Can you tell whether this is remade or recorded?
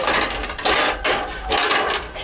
recorded